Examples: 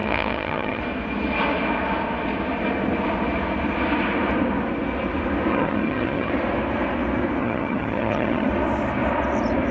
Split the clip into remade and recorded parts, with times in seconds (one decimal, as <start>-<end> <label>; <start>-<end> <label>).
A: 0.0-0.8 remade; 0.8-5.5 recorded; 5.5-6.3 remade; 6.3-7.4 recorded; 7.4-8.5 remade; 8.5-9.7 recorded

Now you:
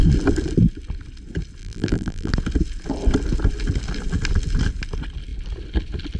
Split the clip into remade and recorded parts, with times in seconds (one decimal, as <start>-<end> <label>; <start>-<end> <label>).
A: 0.0-1.6 recorded; 1.6-2.3 remade; 2.3-6.2 recorded

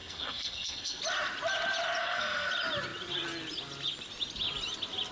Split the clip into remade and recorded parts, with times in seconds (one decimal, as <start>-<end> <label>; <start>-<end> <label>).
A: 0.0-1.0 remade; 1.0-2.0 recorded; 2.0-2.5 remade; 2.5-5.1 recorded

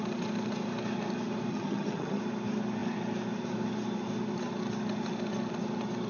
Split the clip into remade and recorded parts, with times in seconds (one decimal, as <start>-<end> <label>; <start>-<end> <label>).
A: 0.0-1.5 recorded; 1.5-2.2 remade; 2.2-6.1 recorded